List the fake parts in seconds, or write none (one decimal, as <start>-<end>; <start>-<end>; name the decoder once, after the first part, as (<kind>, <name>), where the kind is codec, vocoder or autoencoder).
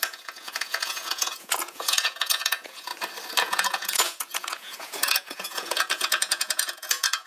0.0-2.9 (vocoder, Vocos); 3.4-7.3